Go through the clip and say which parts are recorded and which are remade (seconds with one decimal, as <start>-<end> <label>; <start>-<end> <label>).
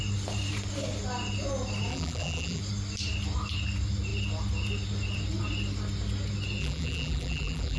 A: 0.0-1.9 recorded; 1.9-2.6 remade; 2.6-6.6 recorded; 6.6-7.8 remade